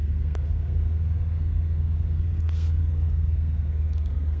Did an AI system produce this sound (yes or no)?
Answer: yes